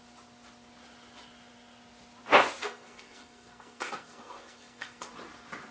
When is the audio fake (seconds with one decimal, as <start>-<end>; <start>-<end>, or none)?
2.6-5.1